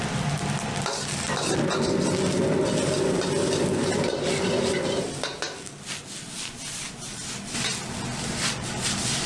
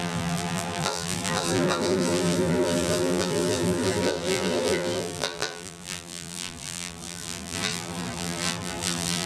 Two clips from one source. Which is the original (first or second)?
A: first